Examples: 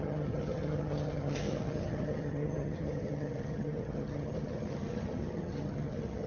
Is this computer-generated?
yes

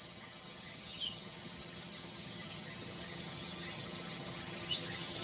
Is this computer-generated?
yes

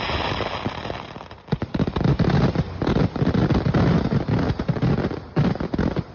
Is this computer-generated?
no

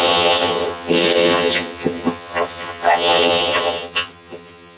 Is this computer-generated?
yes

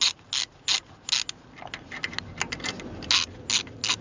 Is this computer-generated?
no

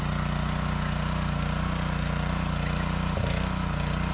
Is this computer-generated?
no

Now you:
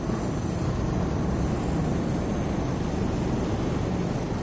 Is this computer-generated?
no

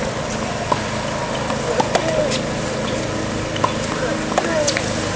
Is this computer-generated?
no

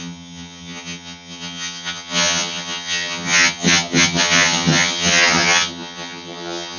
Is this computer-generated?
yes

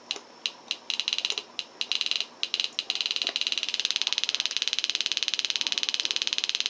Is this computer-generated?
no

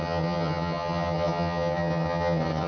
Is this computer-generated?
yes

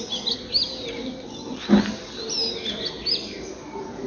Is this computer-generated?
no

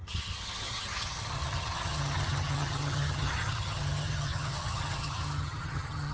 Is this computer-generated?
yes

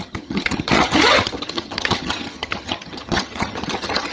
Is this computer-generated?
yes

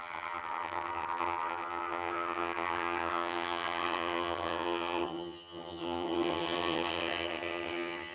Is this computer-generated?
yes